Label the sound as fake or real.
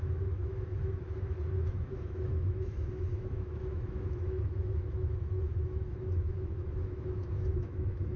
fake